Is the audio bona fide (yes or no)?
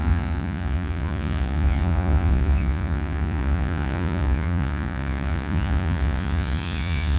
no